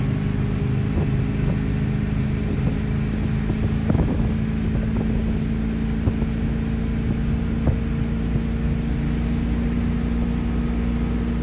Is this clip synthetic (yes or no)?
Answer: no